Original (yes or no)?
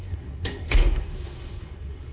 no